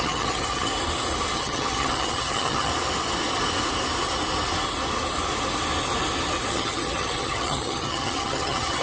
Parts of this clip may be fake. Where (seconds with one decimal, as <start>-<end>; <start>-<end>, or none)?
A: 0.0-0.7; 1.3-2.7; 6.5-8.8